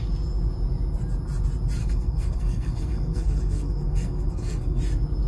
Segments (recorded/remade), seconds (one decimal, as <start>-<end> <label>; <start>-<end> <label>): 0.0-1.8 recorded; 1.8-4.8 remade; 4.8-5.3 recorded